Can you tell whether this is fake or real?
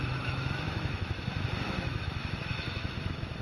fake